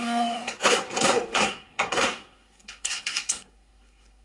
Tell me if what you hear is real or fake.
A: fake